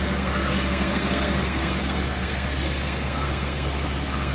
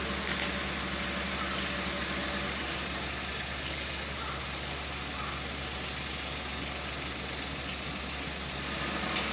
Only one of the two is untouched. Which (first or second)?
second